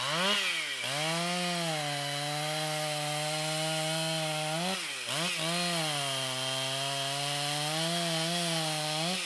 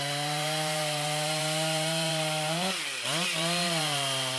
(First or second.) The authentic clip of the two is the first